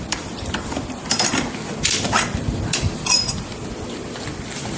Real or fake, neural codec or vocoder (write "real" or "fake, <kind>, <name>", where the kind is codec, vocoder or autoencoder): fake, vocoder, BigVGAN v2